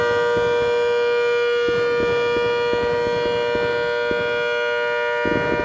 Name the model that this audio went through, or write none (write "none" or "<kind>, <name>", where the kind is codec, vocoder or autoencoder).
none